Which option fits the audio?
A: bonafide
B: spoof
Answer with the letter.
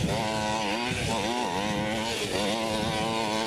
A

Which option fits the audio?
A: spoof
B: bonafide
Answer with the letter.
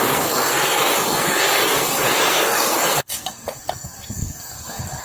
A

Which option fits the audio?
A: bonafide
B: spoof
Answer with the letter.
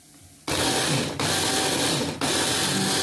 A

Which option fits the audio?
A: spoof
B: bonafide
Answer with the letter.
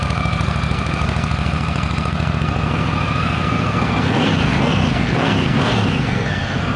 A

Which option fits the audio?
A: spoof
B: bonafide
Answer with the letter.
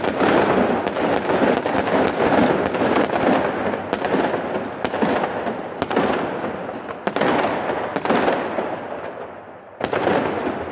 B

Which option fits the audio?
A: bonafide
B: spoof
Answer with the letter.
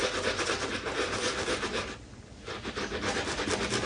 A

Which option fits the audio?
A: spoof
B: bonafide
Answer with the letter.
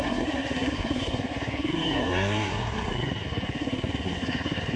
A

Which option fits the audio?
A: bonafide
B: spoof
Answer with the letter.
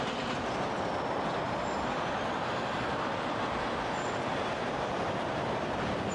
A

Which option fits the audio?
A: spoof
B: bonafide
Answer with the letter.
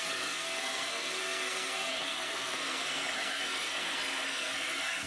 A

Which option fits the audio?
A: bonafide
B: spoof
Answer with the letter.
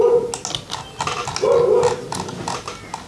A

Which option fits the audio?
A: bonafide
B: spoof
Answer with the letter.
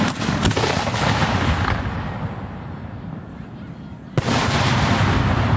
A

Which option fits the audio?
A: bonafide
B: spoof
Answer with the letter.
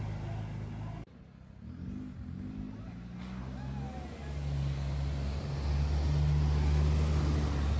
A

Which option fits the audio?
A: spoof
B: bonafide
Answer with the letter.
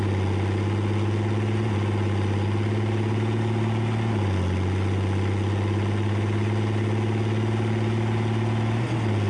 B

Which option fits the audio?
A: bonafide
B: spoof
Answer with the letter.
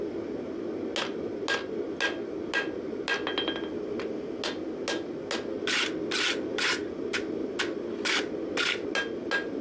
A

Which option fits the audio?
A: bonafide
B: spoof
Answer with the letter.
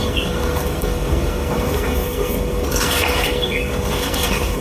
B